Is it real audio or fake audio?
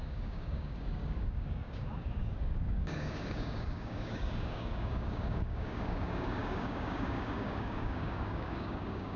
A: fake